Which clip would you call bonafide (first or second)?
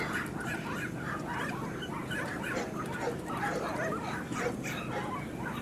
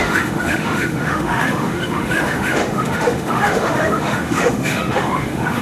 first